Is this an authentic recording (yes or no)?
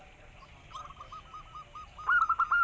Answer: yes